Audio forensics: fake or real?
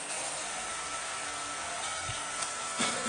fake